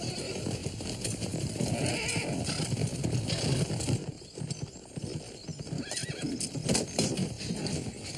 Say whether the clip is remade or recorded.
recorded